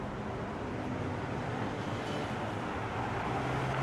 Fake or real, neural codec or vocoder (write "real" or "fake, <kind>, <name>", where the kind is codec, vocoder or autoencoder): real